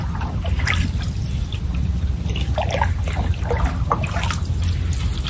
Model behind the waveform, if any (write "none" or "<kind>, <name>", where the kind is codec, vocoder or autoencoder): none